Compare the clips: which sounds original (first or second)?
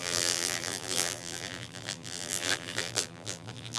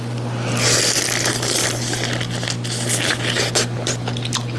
second